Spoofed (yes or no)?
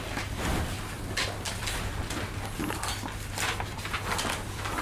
no